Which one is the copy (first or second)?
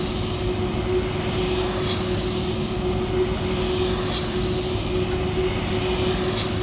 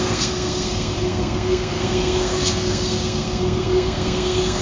second